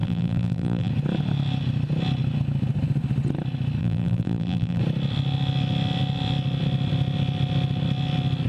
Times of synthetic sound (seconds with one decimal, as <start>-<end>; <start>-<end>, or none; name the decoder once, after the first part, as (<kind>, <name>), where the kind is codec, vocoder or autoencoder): 0.0-0.9 (vocoder, BigVGAN v2); 3.8-4.8